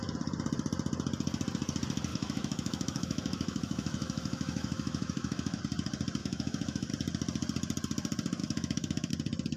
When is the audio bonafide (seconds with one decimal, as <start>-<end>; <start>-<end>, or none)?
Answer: 0.0-2.1; 5.6-6.2; 6.9-8.4; 9.1-9.6